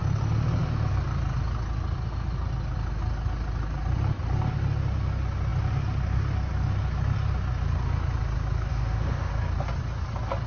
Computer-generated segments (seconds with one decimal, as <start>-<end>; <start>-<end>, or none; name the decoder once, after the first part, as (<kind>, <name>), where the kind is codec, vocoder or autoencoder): 8.7-9.3 (autoencoder, DAC-VAE)

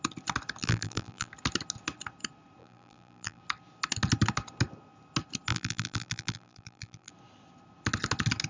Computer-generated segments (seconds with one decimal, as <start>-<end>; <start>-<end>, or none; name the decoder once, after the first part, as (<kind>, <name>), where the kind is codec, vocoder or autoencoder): 0.6-1.3 (vocoder, BigVGAN v2); 2.6-3.4; 5.5-7.1

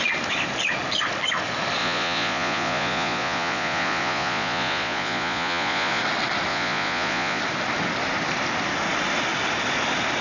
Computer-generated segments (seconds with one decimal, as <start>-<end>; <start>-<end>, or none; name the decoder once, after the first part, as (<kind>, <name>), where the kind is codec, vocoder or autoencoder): 1.8-6.0 (vocoder, Vocos); 6.5-7.4

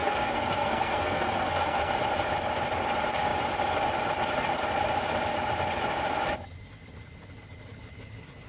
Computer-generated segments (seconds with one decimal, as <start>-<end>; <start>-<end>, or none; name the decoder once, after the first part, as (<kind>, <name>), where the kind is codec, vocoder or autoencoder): 0.0-1.9 (codec, SNAC)

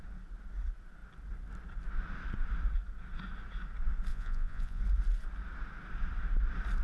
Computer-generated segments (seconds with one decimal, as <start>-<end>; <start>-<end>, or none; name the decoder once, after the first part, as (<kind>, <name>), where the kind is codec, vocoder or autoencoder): 4.1-4.8 (vocoder, Vocos)